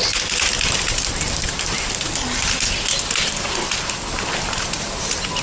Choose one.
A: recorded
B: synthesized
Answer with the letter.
A